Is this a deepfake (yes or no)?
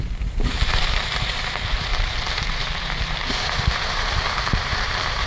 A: yes